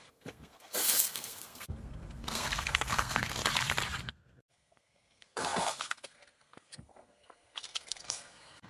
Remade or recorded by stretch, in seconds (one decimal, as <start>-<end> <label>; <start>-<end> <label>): 0.0-3.4 remade; 3.4-4.0 recorded; 4.0-8.7 remade